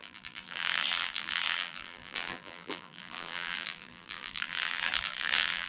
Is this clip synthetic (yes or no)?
yes